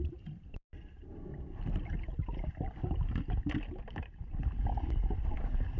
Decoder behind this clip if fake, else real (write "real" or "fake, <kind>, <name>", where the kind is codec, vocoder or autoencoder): fake, vocoder, BigVGAN v2